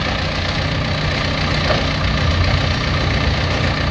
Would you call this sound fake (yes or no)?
no